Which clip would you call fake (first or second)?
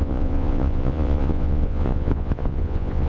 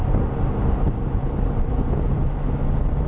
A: first